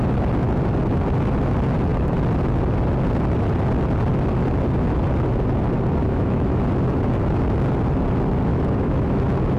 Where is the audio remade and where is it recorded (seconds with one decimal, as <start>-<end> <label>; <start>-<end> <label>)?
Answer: 0.0-6.0 recorded; 6.0-6.6 remade; 6.6-8.5 recorded; 8.5-9.2 remade; 9.2-9.6 recorded